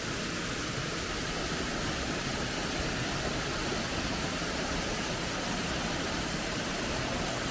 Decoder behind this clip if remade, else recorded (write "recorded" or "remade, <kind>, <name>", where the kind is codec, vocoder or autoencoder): recorded